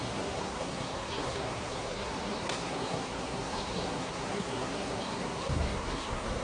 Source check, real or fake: fake